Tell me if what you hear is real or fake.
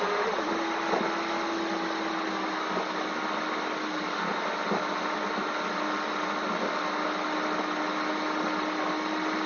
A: real